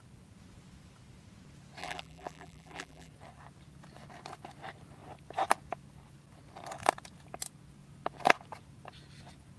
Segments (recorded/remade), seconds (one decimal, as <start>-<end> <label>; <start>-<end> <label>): 0.0-1.8 recorded; 1.8-3.1 remade; 3.1-9.6 recorded